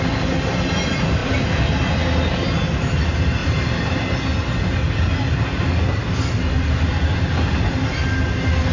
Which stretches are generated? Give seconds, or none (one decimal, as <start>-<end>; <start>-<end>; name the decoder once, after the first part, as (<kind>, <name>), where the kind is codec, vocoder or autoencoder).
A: 3.4-4.0 (vocoder, BigVGAN v2)

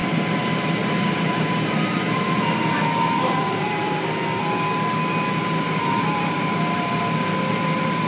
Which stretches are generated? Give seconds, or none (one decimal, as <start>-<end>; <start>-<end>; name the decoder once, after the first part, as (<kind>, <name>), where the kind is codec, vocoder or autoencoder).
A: 0.0-4.1 (vocoder, BigVGAN v2); 5.4-7.0

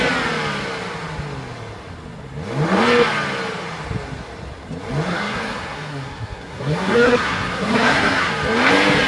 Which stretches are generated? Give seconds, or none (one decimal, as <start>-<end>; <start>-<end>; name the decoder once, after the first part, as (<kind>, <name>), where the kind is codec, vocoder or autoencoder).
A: 5.1-8.3 (codec, SNAC)

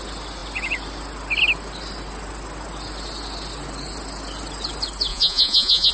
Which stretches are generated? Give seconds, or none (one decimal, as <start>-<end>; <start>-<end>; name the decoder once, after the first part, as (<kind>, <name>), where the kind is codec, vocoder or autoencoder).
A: 5.1-5.9 (vocoder, Vocos)

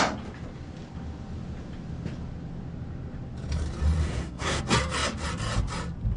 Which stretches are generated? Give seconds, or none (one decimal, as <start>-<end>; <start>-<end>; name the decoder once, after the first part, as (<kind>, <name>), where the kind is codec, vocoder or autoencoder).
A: 4.0-4.6 (codec, SNAC)

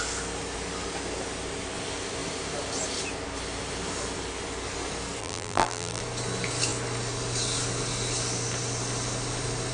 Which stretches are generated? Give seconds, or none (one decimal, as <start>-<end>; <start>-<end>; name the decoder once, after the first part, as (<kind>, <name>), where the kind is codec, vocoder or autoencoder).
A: 5.2-6.0 (vocoder, BigVGAN v2)

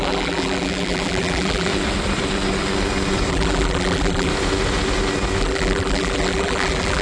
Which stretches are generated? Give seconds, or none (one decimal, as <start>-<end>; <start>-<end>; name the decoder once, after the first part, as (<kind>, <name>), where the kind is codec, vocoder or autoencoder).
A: 0.0-1.7 (vocoder, BigVGAN v2); 3.3-4.3; 5.4-7.0